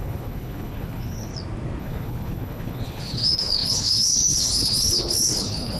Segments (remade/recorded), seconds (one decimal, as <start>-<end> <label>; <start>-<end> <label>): 0.0-1.3 remade; 1.3-1.8 recorded; 1.8-5.8 remade